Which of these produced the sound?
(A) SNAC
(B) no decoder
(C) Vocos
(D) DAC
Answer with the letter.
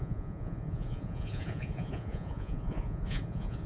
C